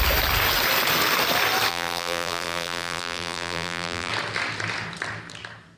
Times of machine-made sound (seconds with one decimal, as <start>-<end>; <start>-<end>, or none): 1.7-4.1